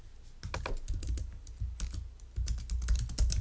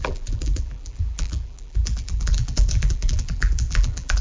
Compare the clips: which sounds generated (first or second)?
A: second